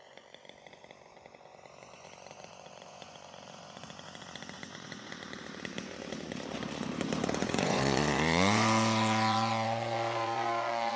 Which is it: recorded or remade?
remade